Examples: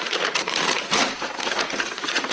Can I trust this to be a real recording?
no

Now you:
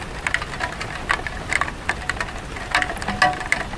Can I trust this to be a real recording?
yes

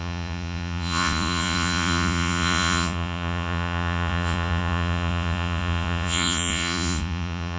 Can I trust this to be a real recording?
no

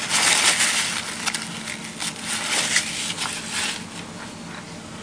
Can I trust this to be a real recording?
yes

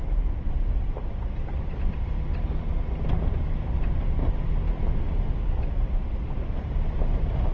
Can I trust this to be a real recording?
yes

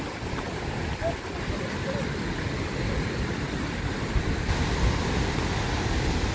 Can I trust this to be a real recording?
yes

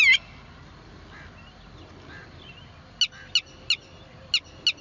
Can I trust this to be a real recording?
yes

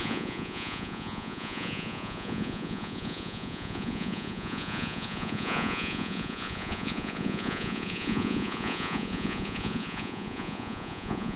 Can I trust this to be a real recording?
no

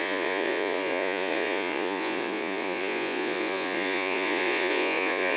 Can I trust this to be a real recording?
no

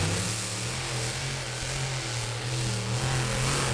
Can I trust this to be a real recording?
yes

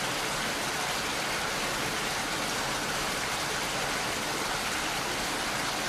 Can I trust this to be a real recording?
yes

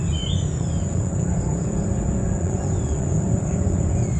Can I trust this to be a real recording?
no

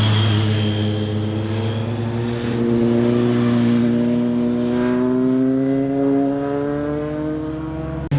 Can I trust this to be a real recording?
yes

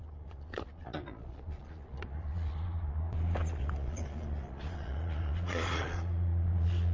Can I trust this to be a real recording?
no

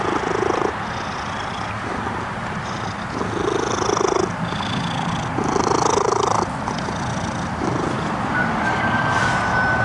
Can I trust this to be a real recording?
yes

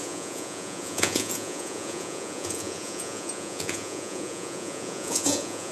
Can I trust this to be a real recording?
no